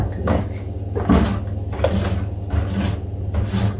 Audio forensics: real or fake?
real